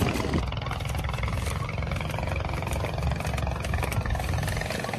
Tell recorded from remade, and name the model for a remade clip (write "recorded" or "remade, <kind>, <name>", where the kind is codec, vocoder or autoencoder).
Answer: recorded